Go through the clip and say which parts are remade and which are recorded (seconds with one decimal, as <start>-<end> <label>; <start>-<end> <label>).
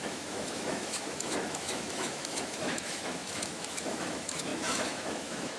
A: 0.0-5.6 remade